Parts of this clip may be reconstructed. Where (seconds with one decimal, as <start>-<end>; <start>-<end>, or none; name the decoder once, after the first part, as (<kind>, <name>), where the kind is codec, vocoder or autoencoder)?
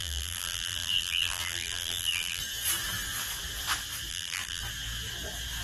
0.0-2.4 (vocoder, BigVGAN v2); 4.1-4.6